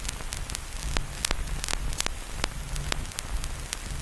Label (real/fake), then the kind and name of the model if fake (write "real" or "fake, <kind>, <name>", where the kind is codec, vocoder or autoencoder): real